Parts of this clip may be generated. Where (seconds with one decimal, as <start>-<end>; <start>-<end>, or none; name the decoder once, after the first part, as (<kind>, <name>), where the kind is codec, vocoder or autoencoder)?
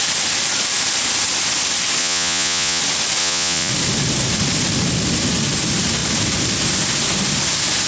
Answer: 2.0-2.8 (vocoder, Vocos); 3.2-3.7